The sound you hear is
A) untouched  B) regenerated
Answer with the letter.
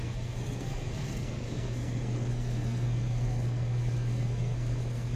B